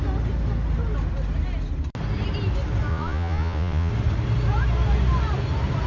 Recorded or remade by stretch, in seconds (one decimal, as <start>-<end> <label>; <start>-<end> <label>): 0.0-2.9 recorded; 2.9-3.9 remade; 3.9-5.9 recorded